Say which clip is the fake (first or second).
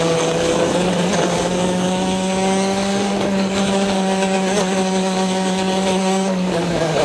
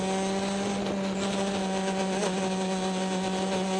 first